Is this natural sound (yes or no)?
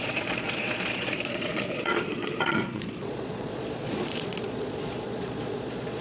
no